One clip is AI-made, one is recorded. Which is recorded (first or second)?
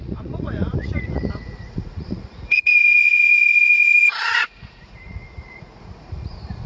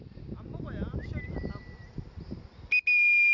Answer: second